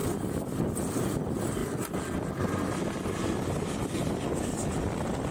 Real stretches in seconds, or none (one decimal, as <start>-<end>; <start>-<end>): 0.0-5.3